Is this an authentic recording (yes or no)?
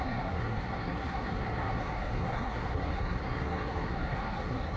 no